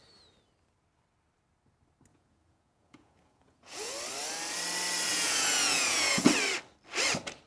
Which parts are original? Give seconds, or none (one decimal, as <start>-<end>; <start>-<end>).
0.0-2.1; 3.9-5.1; 6.3-7.5